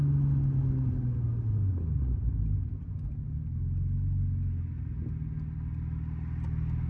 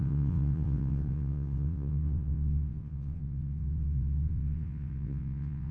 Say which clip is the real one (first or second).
first